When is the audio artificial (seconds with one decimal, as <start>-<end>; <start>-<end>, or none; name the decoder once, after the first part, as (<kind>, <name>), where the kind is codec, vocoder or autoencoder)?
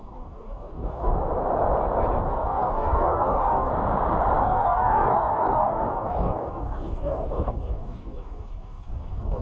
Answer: 0.0-1.1 (codec, DAC); 2.3-3.7; 4.4-9.4